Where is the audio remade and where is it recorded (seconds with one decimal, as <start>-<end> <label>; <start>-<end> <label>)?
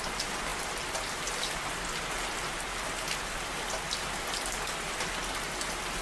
0.0-6.0 recorded